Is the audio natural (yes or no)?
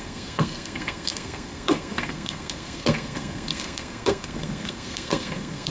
no